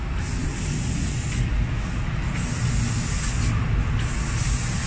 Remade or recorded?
recorded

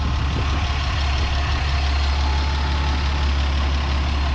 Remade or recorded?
recorded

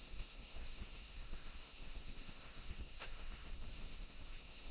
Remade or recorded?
remade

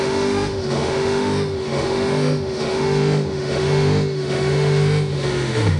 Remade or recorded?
remade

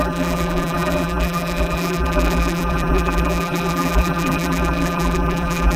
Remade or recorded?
remade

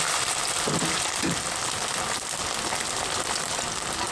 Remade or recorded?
recorded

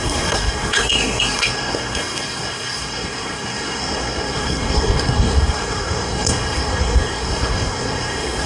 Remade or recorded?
remade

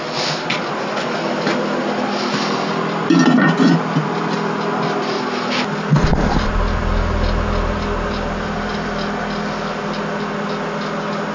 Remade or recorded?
recorded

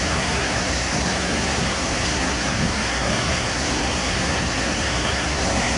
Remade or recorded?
remade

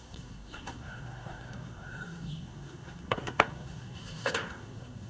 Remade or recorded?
remade